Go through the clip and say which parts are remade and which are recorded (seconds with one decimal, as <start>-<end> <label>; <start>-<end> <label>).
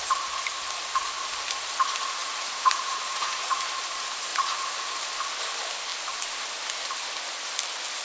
0.0-2.2 recorded; 2.2-3.6 remade; 3.6-4.3 recorded; 4.3-4.8 remade; 4.8-8.0 recorded